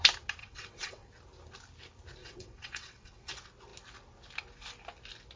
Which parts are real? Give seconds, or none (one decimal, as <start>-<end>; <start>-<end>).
0.0-0.4; 1.1-2.2; 3.3-5.4